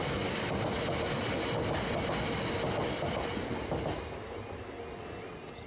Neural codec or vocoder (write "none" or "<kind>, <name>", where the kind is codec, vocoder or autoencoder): none